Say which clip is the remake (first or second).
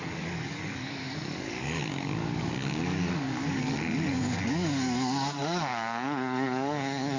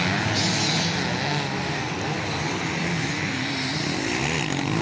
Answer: first